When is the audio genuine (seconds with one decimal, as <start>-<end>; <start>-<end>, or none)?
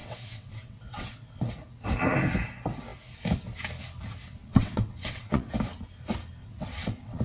1.5-4.4; 5.5-6.4